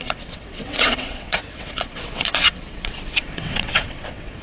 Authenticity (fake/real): fake